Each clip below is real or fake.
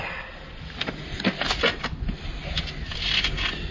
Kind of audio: real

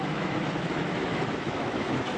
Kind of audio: fake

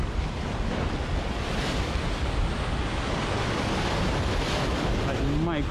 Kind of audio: real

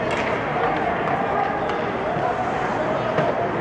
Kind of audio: real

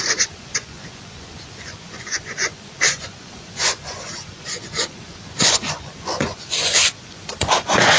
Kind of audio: fake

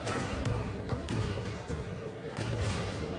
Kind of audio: fake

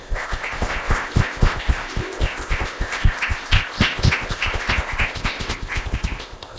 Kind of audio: fake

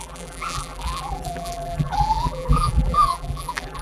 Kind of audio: fake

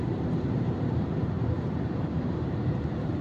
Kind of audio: fake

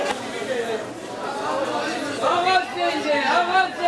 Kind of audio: real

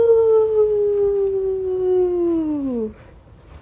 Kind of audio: real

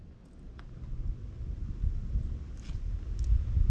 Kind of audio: real